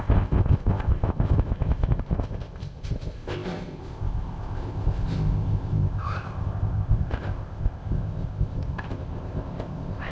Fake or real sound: fake